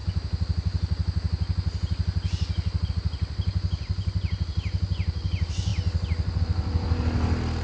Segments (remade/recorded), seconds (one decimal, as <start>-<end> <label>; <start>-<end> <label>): 0.0-7.6 recorded